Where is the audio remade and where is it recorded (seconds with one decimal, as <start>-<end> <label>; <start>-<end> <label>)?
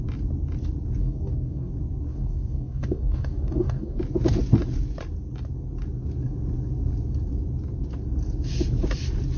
0.0-1.0 recorded; 1.0-1.7 remade; 1.7-2.1 recorded; 2.1-4.0 remade; 4.0-9.4 recorded